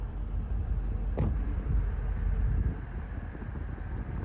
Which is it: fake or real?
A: fake